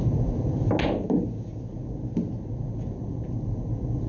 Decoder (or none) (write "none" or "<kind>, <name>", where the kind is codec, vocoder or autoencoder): none